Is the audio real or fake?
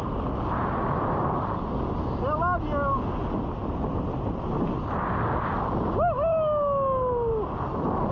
real